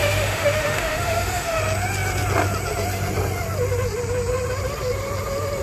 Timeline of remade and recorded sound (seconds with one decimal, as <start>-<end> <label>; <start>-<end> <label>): 0.0-1.6 remade; 1.6-5.6 recorded